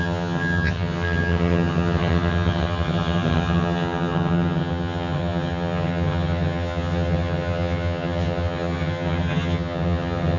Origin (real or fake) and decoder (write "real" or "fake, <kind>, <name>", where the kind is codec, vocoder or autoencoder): fake, vocoder, HiFi-GAN